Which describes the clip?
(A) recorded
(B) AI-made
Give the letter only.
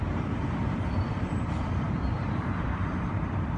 B